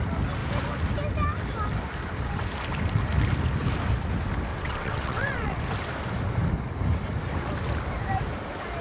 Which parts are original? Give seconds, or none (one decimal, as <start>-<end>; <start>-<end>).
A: 0.0-4.5; 5.6-8.8